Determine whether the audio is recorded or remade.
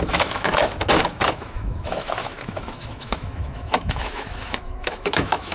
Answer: remade